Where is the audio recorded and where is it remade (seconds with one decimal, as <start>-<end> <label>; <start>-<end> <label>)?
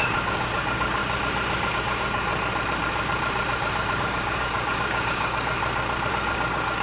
0.0-1.0 remade; 1.0-1.7 recorded; 1.7-2.3 remade; 2.3-4.0 recorded; 4.0-5.6 remade; 5.6-6.1 recorded; 6.1-6.8 remade